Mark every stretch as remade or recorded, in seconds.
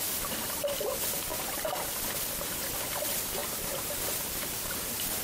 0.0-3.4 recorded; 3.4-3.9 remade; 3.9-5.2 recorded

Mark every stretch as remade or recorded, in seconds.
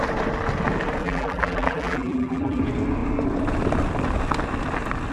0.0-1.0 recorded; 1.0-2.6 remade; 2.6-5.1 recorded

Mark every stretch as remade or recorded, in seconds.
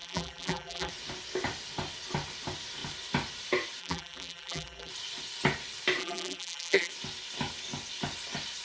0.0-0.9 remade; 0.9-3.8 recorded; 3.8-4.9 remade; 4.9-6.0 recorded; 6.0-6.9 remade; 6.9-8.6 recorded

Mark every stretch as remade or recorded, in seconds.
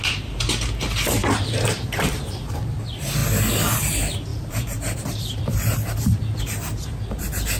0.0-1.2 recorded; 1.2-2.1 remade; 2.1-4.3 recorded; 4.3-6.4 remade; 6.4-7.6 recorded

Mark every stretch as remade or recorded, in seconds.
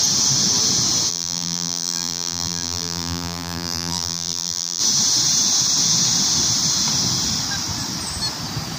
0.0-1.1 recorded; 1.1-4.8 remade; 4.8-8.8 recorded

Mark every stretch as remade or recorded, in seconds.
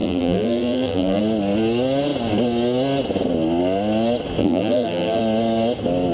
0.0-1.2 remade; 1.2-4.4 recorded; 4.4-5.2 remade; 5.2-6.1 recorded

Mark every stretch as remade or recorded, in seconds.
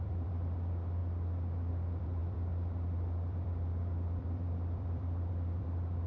0.0-1.0 remade; 1.0-1.7 recorded; 1.7-6.1 remade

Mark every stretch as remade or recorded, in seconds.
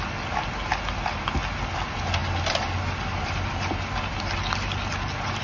0.0-5.4 recorded